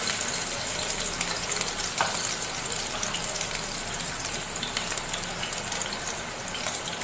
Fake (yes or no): no